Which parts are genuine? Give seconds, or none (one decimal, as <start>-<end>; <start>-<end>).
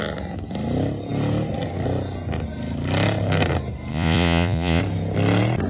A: 0.0-3.9; 4.8-5.7